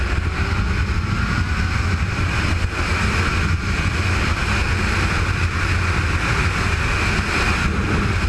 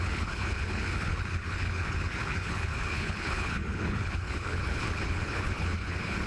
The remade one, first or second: second